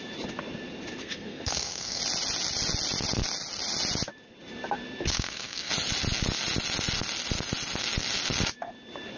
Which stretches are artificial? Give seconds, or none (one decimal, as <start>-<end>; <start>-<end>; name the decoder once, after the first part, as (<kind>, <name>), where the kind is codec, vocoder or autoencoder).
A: 1.0-2.0 (codec, SNAC); 5.1-5.7